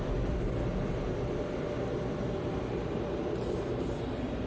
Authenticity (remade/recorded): recorded